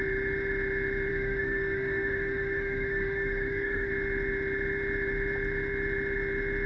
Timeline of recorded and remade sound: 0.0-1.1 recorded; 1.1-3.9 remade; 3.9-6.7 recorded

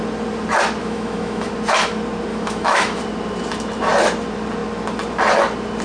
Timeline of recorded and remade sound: 0.0-0.8 recorded; 0.8-1.5 remade; 1.5-2.3 recorded; 2.3-3.0 remade; 3.0-5.8 recorded

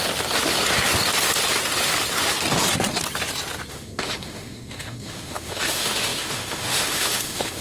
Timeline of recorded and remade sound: 0.0-3.7 recorded; 3.7-7.6 remade

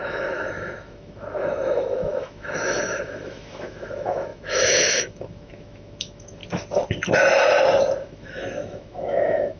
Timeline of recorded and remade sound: 0.0-6.4 remade; 6.4-8.0 recorded; 8.0-9.6 remade